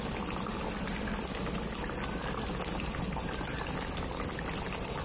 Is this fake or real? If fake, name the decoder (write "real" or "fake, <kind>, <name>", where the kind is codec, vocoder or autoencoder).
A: real